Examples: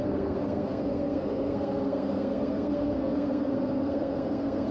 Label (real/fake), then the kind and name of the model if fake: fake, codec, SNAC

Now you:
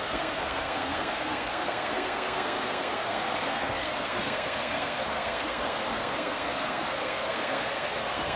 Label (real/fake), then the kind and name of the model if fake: fake, codec, SNAC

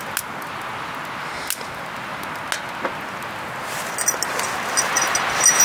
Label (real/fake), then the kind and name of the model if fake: real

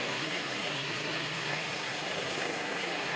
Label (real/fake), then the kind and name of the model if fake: fake, codec, SNAC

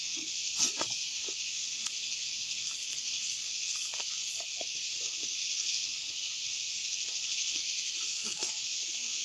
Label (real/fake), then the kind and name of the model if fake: fake, codec, SNAC